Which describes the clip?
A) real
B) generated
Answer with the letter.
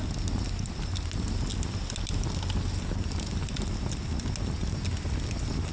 A